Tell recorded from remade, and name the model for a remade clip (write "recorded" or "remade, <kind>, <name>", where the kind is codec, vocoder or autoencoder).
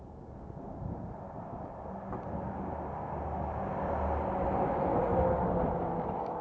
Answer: recorded